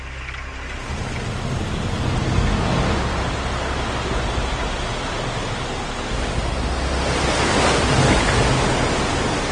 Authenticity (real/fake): real